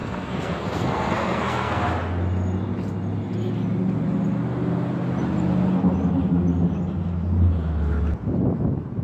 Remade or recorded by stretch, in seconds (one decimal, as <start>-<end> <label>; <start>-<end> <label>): 0.0-1.9 remade; 1.9-9.0 recorded